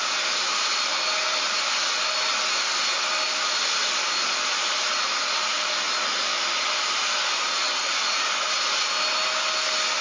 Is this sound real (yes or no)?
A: yes